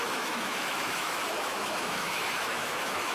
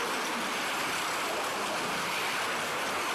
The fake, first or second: first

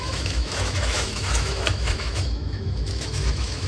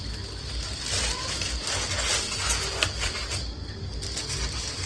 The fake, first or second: first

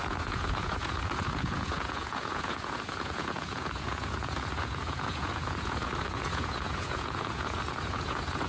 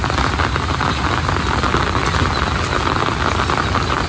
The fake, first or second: first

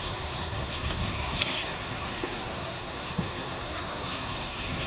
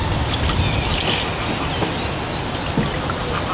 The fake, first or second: first